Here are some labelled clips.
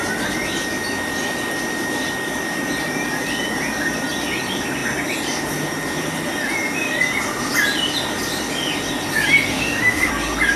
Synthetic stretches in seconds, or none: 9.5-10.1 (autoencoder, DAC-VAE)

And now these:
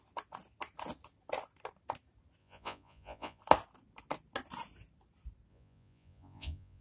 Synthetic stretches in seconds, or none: 2.4-3.4 (vocoder, Vocos); 5.5-6.8

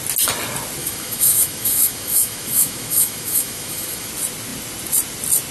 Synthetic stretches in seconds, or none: 0.8-4.1 (autoencoder, DAC-VAE)

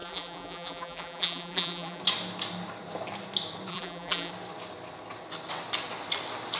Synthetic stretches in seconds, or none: 0.0-2.0 (vocoder, BigVGAN v2); 3.7-4.3

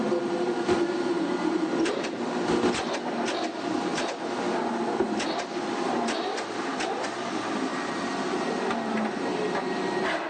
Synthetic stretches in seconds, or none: 1.5-2.6 (vocoder, BigVGAN v2); 7.7-8.5

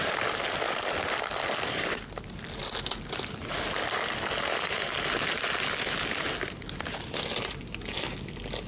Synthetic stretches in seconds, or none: none

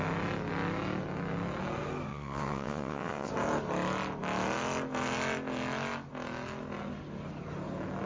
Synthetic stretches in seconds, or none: 2.1-3.3 (vocoder, WaveNeXt)